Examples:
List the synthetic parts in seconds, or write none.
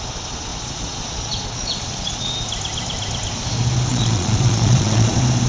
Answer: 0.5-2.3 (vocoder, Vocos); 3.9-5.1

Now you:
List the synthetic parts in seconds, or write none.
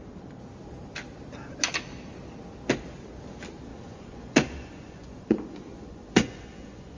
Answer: 3.7-7.0 (vocoder, Vocos)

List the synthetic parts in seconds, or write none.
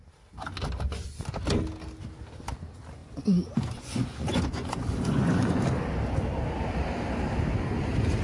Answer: 3.0-5.6 (vocoder, Vocos)